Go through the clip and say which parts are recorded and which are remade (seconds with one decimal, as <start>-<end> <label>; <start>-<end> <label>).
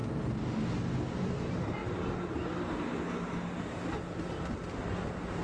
0.0-5.4 recorded